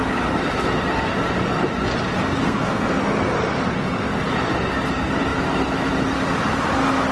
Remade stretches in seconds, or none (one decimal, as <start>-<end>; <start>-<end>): 2.4-3.0